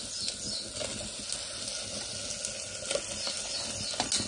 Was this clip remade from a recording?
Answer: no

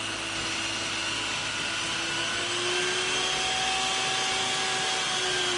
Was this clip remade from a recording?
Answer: no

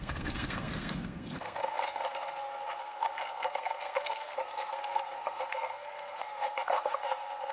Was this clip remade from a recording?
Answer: yes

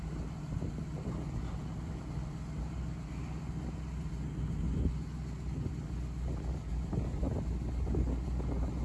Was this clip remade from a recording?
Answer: no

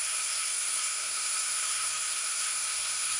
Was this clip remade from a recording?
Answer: yes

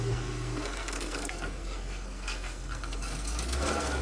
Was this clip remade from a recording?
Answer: yes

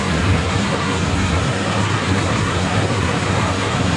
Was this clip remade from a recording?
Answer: yes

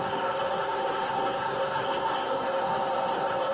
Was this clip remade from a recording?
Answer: yes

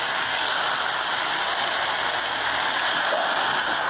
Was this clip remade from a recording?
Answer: no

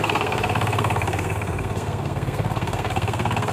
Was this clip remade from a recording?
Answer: yes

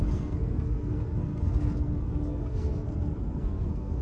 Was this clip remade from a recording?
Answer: yes